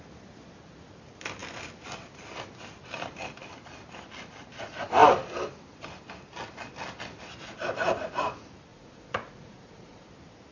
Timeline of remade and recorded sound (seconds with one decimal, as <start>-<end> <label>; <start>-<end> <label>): 0.0-8.7 recorded; 8.7-10.1 remade; 10.1-10.5 recorded